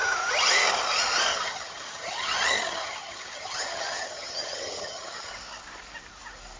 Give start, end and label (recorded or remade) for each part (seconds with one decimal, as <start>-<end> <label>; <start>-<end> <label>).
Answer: 0.0-1.3 recorded; 1.3-5.3 remade; 5.3-6.6 recorded